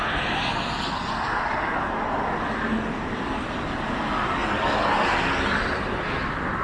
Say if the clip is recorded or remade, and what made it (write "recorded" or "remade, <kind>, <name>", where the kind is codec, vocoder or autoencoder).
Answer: recorded